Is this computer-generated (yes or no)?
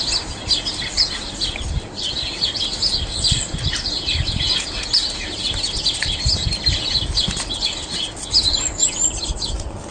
no